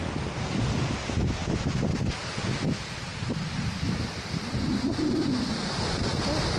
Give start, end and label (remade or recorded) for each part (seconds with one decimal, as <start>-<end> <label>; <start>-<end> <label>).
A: 0.0-6.6 recorded